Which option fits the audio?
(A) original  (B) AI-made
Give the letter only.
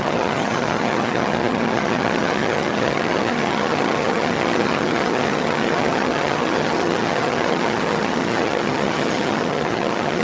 B